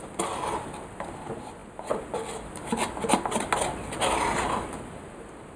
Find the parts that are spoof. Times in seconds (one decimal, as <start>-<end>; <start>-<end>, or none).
none